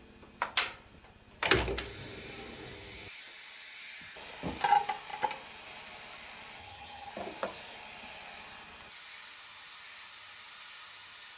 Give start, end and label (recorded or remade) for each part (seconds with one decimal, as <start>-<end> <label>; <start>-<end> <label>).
0.0-6.6 recorded; 6.6-7.1 remade; 7.1-11.4 recorded